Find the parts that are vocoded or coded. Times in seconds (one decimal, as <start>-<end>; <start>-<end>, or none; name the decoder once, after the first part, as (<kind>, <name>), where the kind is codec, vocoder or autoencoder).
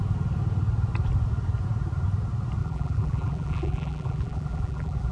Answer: 2.6-5.1 (vocoder, BigVGAN v2)